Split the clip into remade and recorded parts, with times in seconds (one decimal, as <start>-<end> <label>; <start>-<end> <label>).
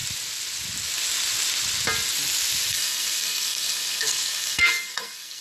0.0-2.7 recorded; 2.7-5.4 remade